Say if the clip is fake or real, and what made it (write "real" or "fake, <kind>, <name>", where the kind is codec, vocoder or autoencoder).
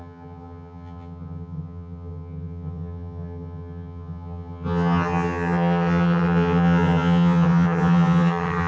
fake, vocoder, HiFi-GAN